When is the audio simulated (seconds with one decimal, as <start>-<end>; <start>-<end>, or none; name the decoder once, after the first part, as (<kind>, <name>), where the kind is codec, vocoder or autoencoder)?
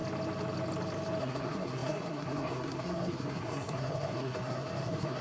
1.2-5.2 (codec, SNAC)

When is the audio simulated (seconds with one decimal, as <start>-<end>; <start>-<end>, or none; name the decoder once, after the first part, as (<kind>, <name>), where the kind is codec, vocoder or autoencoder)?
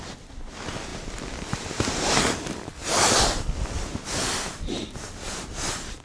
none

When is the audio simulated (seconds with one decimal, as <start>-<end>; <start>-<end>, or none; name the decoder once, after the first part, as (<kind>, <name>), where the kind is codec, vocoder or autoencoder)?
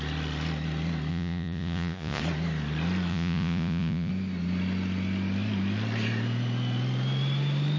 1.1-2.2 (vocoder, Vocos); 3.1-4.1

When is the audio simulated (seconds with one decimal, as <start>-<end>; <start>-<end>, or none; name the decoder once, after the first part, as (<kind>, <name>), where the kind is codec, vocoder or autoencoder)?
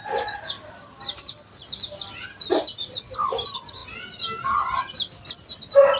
none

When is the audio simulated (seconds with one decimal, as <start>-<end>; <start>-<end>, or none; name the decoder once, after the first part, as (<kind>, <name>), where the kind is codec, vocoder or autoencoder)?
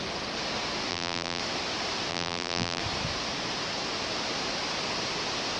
0.9-1.4 (vocoder, BigVGAN v2); 2.1-2.8